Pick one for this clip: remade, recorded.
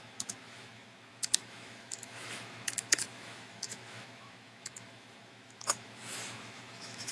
remade